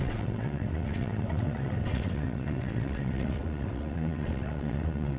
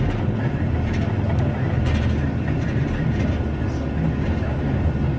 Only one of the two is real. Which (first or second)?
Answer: second